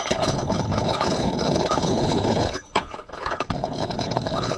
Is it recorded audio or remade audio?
remade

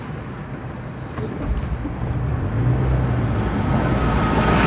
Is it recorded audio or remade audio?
recorded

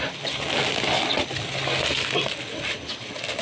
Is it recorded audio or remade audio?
recorded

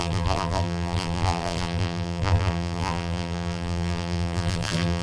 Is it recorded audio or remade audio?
remade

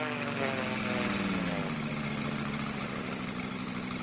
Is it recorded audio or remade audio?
recorded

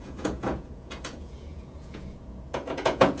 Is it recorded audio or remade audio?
remade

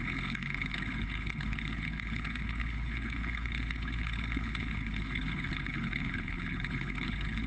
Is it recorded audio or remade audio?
remade